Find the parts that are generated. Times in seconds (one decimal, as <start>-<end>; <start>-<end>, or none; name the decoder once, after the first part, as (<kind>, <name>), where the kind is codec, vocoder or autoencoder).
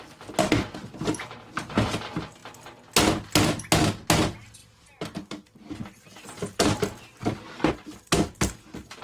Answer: none